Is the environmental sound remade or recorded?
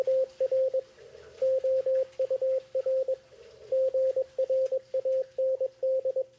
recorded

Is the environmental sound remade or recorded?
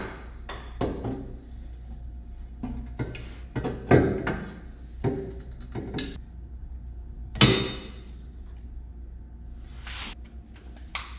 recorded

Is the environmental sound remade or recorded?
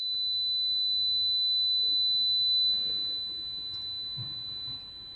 recorded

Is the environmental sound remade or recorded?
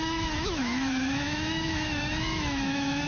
remade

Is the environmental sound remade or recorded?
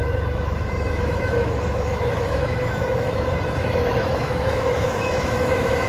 remade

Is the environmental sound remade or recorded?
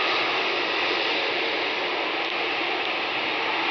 recorded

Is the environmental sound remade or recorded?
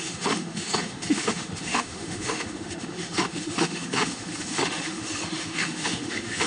remade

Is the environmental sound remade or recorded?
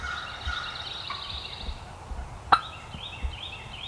recorded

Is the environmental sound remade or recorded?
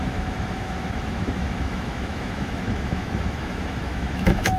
remade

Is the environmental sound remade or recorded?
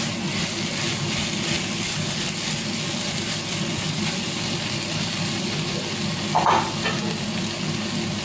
recorded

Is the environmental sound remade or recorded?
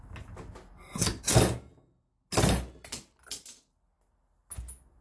recorded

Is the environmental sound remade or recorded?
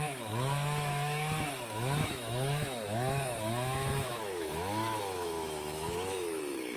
remade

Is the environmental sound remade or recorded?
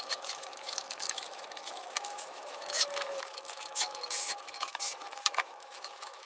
remade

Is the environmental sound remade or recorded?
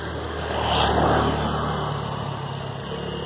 recorded